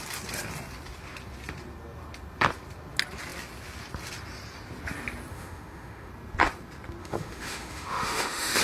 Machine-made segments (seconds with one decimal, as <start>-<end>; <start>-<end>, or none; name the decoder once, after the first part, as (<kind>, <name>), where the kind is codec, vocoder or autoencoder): 5.3-6.1 (autoencoder, DAC-VAE); 7.0-8.6